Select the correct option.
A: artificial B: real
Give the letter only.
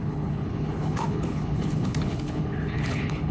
A